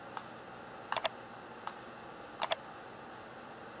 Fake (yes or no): no